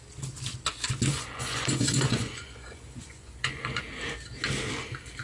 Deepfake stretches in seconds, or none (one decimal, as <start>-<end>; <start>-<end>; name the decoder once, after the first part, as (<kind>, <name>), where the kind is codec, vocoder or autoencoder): 1.1-3.8 (vocoder, Vocos)